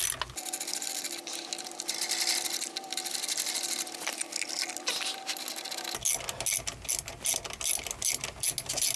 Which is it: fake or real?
real